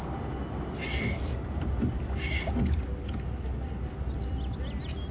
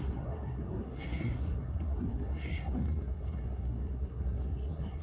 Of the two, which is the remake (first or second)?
second